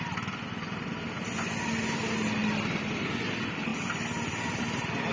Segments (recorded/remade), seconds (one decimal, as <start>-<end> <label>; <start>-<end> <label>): 0.0-5.1 recorded